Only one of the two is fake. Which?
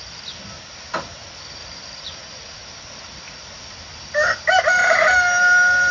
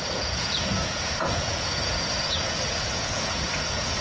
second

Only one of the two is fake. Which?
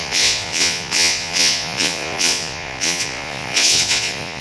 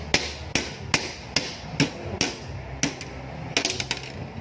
first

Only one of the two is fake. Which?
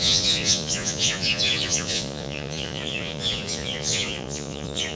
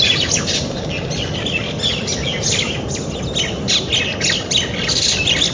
first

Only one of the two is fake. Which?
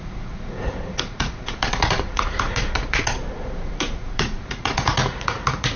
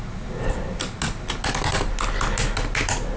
first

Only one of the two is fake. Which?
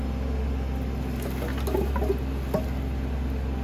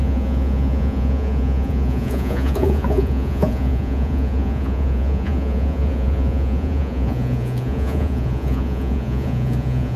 second